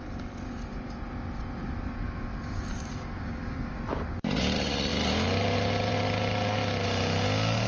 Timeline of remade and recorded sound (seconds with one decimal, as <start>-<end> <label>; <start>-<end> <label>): 0.0-2.9 recorded; 2.9-3.7 remade; 3.7-7.7 recorded